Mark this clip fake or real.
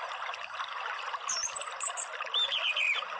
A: real